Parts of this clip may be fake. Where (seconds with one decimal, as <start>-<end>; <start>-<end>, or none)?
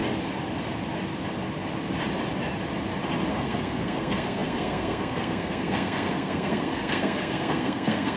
3.3-8.2